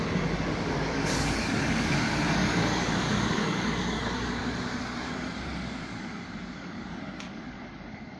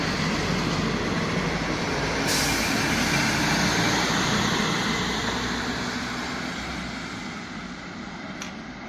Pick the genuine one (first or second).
second